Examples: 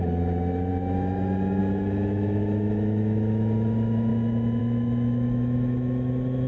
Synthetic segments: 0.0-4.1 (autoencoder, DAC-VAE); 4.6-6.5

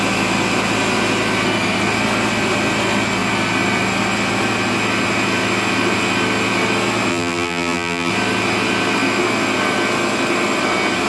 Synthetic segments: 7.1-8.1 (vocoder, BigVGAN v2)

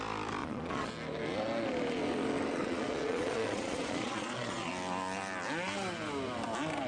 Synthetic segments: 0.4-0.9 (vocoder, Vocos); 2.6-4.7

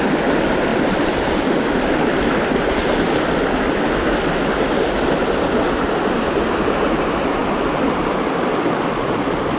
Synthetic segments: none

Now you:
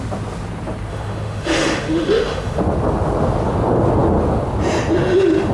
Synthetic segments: 0.9-2.6 (autoencoder, DAC-VAE)

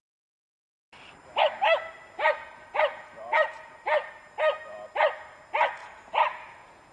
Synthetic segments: 2.4-4.2 (vocoder, Vocos); 5.8-6.9

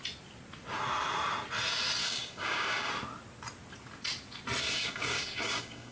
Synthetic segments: 2.0-2.9 (codec, DAC); 4.6-5.9